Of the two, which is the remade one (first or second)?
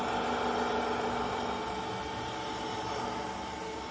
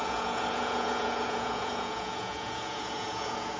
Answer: second